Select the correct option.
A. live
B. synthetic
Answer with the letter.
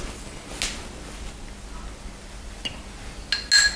A